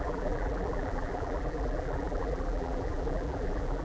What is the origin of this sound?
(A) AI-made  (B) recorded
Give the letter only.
A